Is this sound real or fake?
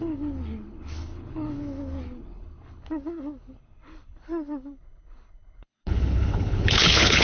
fake